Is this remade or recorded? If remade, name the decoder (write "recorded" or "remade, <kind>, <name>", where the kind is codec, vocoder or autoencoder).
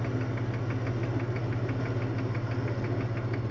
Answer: recorded